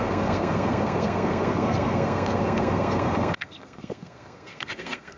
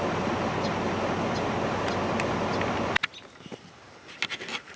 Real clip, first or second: second